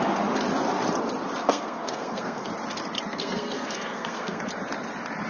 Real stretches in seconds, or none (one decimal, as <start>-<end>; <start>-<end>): 0.0-1.4; 2.5-3.1; 4.4-5.3

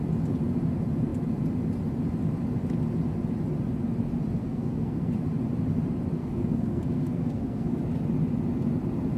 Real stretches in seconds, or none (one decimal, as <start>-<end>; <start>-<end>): 0.0-4.4; 5.1-6.2; 7.8-9.2

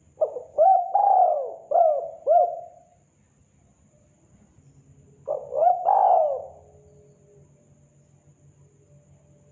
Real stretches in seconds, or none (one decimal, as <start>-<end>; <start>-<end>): 0.0-9.5

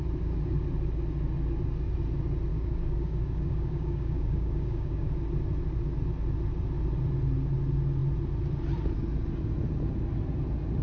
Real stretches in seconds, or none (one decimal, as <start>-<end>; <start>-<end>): 0.0-2.5; 5.1-10.8

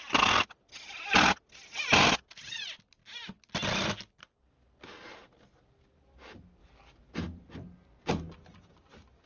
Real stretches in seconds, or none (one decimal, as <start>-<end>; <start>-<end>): 0.0-9.3

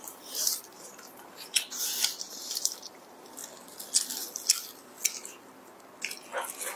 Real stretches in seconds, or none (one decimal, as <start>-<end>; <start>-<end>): 3.4-6.8

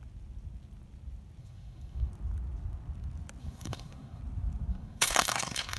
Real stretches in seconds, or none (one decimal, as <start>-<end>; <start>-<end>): 0.0-1.4; 2.1-3.4; 4.2-4.7